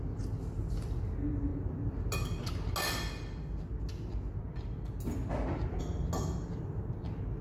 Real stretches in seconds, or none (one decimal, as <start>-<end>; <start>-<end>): 0.0-7.4

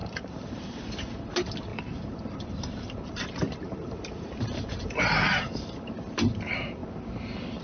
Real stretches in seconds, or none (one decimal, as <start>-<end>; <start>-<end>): 0.8-1.7; 5.6-7.6

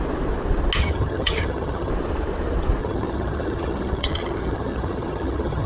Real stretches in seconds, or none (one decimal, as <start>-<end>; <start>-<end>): 0.0-0.8; 1.9-2.8

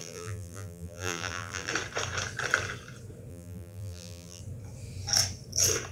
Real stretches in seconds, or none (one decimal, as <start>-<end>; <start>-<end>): 1.7-3.3; 4.4-5.9

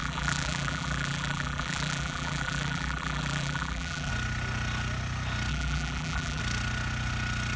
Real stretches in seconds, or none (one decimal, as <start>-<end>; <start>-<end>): 4.1-5.5; 6.4-7.6

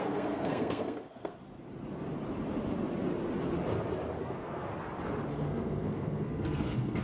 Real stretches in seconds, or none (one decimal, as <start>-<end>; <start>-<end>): 1.4-4.2; 4.7-5.3

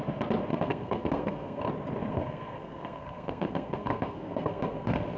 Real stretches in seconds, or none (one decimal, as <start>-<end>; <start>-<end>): 0.0-0.5; 1.6-2.1